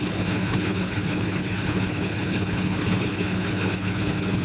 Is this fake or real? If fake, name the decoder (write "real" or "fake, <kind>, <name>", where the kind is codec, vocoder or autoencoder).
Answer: fake, codec, HILCodec